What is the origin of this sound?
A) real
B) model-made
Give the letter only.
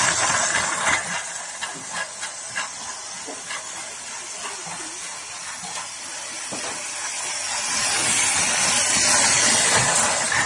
A